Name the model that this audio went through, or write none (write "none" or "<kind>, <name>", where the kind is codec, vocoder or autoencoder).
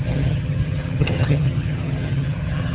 vocoder, HiFi-GAN